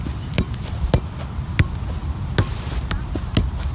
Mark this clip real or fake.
real